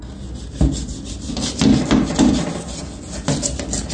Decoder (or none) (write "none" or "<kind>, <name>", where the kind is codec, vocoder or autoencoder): none